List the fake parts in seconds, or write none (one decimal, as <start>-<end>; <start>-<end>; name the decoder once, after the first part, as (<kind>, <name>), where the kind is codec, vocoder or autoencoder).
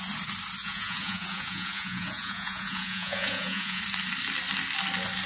0.6-3.8 (vocoder, Vocos)